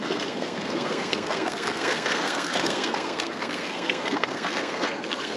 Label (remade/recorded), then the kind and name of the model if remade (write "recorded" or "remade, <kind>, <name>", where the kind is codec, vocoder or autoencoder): remade, codec, SNAC